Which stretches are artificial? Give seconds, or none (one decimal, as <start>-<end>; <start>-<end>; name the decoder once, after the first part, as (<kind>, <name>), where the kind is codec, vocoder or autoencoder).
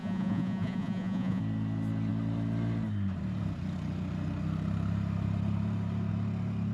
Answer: 0.0-1.4 (vocoder, Vocos)